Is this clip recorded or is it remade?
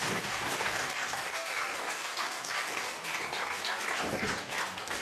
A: remade